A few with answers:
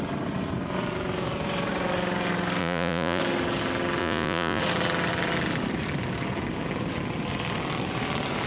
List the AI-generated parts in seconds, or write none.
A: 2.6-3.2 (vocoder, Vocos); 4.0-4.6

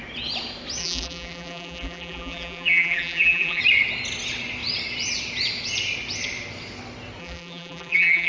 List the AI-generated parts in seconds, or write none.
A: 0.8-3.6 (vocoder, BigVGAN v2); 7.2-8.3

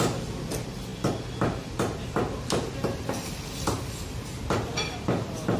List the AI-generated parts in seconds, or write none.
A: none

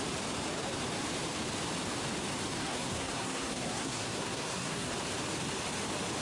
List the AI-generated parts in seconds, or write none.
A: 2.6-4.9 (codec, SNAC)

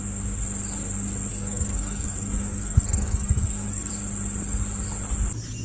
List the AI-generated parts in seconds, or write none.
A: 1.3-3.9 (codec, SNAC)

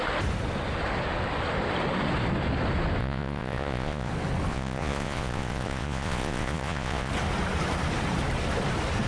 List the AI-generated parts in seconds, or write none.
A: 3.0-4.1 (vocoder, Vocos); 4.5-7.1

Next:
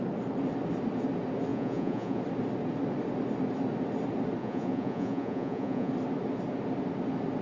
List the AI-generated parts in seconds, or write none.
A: 1.5-2.2 (vocoder, Vocos); 4.4-5.9